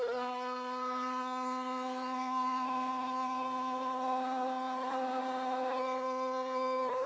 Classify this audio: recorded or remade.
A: remade